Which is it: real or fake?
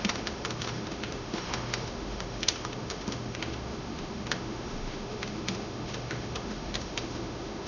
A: fake